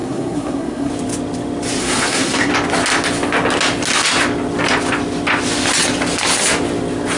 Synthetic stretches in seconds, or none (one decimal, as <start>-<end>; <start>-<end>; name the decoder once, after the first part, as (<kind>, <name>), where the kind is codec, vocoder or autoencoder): 0.0-0.9 (codec, SNAC); 1.8-2.5